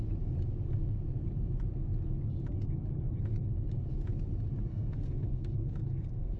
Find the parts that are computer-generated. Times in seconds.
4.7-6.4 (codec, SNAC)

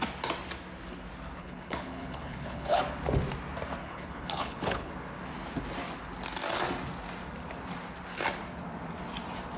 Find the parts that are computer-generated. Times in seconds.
1.4-2.8 (codec, HILCodec); 3.8-4.9